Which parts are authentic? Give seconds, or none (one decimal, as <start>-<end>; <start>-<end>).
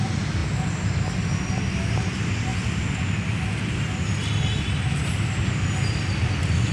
0.0-6.7